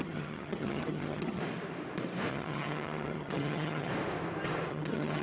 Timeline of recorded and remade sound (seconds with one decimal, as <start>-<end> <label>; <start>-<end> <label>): 0.0-1.4 remade; 1.4-2.3 recorded; 2.3-3.9 remade; 3.9-4.7 recorded; 4.7-5.2 remade